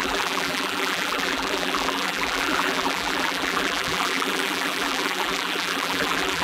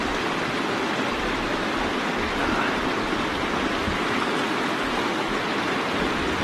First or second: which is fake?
first